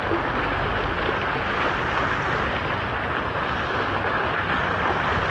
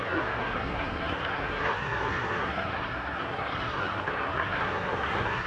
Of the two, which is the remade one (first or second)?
second